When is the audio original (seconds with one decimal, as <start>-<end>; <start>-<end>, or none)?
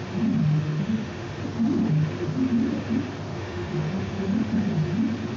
0.0-0.4; 1.4-3.3; 4.6-5.4